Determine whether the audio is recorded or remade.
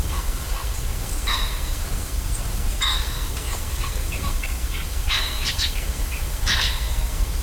remade